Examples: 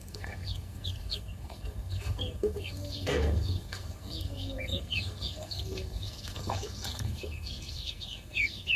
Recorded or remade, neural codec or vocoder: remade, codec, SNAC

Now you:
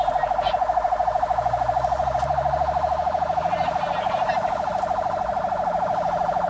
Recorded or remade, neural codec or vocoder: remade, vocoder, BigVGAN v2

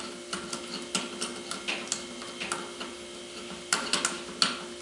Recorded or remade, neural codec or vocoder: recorded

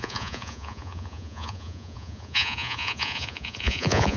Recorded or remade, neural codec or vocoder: remade, vocoder, Vocos